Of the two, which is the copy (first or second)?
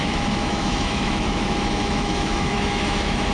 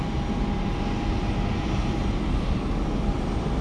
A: first